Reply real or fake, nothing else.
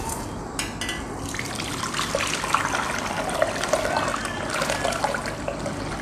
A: real